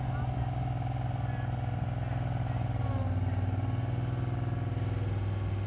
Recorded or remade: recorded